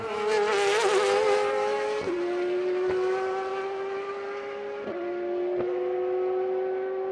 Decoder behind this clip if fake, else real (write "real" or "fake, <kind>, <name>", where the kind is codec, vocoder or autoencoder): real